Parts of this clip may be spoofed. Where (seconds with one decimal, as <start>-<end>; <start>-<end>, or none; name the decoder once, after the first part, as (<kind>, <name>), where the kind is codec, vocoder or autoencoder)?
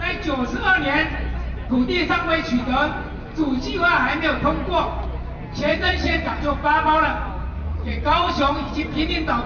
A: 5.7-6.4 (vocoder, Vocos); 7.5-8.9